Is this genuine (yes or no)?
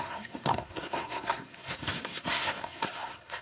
no